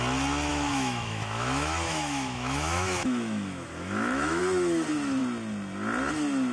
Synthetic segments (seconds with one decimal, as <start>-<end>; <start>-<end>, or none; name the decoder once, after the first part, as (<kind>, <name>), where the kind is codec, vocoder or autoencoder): 0.5-4.4 (autoencoder, DAC-VAE)

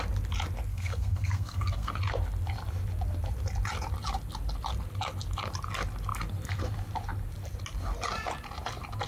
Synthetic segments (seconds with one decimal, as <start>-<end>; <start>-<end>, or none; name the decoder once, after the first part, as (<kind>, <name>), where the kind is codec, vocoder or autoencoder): 0.7-2.0 (codec, SNAC)

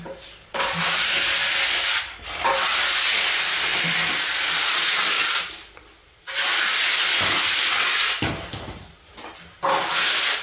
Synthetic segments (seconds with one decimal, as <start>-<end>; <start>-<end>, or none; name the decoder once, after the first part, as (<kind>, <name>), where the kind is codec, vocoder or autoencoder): none

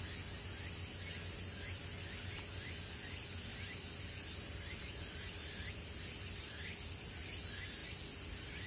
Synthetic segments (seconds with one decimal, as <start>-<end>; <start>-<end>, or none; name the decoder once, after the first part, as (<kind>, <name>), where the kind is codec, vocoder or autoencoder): none

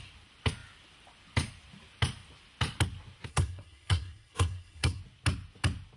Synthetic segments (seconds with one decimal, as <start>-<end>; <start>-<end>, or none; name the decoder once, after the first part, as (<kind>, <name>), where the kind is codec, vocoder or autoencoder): 3.3-5.0 (codec, SNAC)

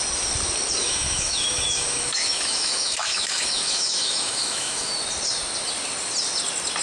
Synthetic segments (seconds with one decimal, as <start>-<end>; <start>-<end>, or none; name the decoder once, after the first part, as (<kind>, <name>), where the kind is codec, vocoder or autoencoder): 0.8-4.9 (autoencoder, DAC-VAE)